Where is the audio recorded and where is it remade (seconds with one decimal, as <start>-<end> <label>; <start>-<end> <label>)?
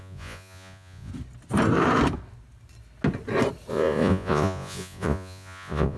0.0-1.1 remade; 1.1-3.7 recorded; 3.7-6.0 remade